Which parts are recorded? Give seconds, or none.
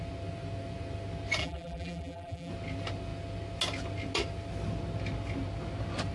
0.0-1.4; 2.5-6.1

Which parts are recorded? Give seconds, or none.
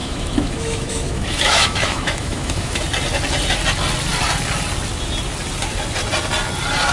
2.8-6.9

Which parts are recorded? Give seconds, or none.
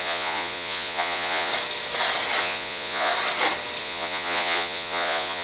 1.5-2.4; 3.1-3.8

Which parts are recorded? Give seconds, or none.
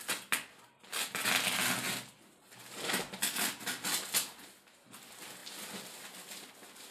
0.0-6.9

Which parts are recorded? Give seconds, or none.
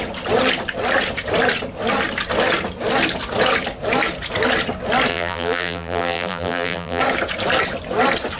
0.0-5.1; 7.0-8.4